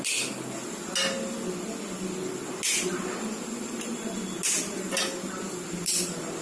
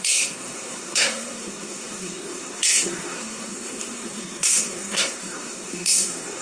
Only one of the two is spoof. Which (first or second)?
second